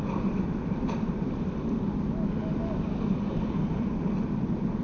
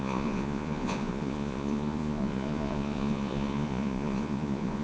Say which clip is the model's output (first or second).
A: second